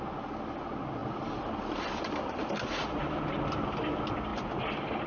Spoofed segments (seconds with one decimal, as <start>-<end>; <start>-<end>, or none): 1.0-2.5; 3.0-3.6; 4.3-5.1